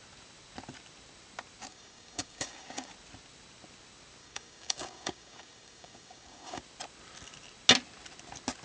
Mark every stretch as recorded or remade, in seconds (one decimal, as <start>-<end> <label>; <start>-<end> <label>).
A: 0.0-1.7 recorded; 1.7-2.9 remade; 2.9-4.2 recorded; 4.2-6.6 remade; 6.6-8.6 recorded